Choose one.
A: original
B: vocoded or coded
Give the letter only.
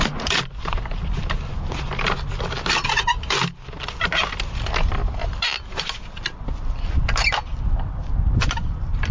A